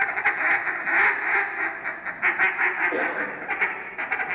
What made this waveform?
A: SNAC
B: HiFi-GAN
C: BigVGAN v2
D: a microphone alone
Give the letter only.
D